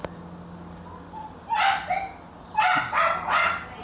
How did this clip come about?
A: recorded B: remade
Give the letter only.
A